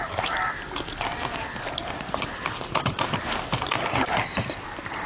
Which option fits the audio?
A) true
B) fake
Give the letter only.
A